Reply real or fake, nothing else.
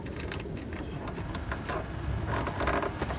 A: real